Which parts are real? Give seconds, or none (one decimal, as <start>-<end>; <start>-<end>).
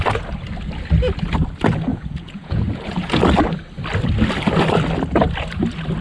0.0-1.9; 3.2-6.0